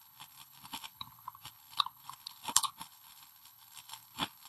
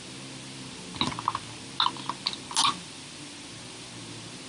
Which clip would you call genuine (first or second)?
second